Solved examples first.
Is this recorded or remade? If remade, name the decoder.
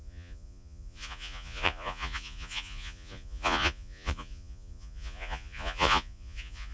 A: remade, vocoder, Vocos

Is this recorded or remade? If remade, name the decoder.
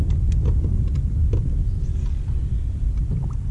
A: recorded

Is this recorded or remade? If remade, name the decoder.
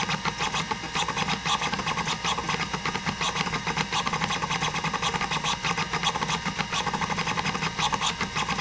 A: recorded